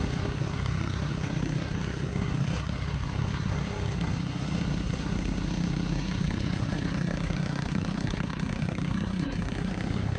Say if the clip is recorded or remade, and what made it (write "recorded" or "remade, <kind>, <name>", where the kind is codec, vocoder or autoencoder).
remade, codec, SNAC